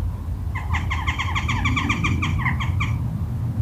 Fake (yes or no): no